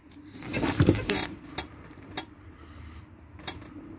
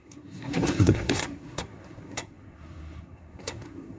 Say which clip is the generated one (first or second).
second